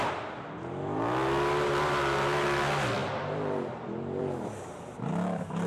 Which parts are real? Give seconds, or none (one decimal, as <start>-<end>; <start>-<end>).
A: 0.0-5.7

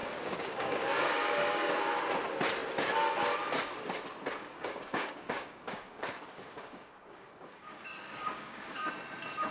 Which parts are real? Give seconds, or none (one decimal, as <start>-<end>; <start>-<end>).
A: 1.7-4.4; 8.9-9.5

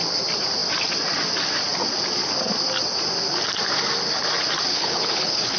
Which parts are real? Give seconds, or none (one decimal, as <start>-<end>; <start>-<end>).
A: 0.0-4.7

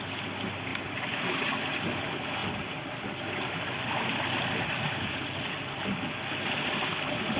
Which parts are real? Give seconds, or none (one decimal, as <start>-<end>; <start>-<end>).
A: 0.0-7.4